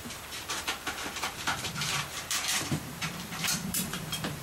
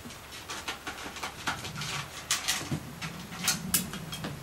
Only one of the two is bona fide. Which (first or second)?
second